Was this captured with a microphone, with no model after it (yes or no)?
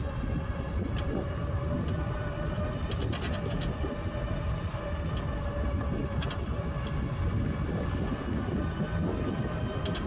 yes